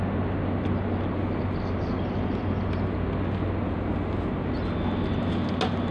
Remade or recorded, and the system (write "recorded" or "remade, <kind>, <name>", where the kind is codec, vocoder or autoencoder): recorded